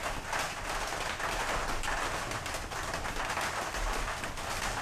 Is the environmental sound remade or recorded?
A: recorded